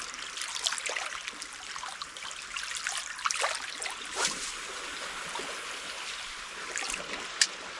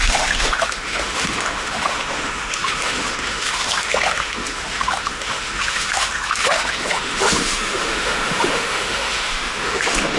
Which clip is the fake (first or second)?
second